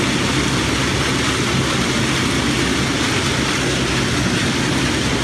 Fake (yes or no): no